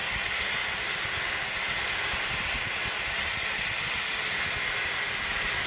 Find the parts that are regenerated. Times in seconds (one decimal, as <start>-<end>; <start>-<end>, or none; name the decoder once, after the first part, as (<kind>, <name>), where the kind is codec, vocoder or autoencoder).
none